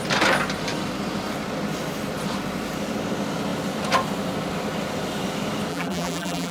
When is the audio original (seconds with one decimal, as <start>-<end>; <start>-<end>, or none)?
0.0-5.7